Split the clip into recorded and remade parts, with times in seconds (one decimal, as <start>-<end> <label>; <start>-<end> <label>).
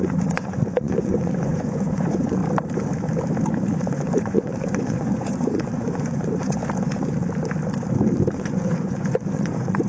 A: 0.0-2.4 remade; 2.4-3.7 recorded; 3.7-6.6 remade; 6.6-8.3 recorded; 8.3-9.9 remade